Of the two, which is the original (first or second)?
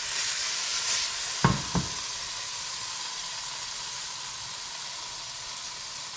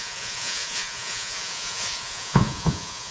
first